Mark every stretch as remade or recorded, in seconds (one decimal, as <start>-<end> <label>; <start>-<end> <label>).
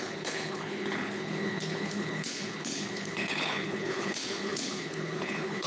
0.0-5.7 remade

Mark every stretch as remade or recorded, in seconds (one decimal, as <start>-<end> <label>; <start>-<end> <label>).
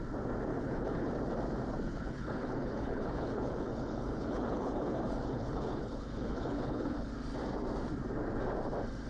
0.0-0.5 recorded; 0.5-1.1 remade; 1.1-1.9 recorded; 1.9-7.1 remade; 7.1-9.1 recorded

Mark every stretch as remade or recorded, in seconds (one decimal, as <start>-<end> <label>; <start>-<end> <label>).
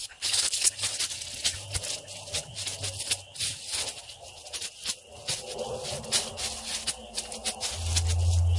0.0-0.7 remade; 0.7-8.6 recorded